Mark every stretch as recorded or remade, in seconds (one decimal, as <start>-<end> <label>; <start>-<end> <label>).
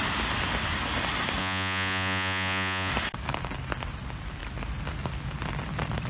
0.0-1.4 recorded; 1.4-2.9 remade; 2.9-6.1 recorded